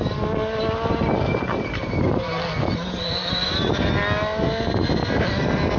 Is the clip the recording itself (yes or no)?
yes